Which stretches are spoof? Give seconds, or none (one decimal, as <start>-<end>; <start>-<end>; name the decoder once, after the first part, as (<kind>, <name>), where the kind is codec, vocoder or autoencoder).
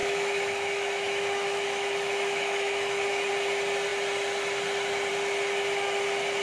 0.0-3.3 (autoencoder, DAC-VAE)